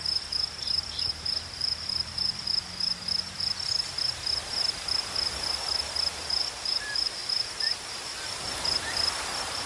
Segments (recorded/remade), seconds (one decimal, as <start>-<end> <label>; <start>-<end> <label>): 0.0-3.0 remade; 3.0-6.3 recorded; 6.3-9.7 remade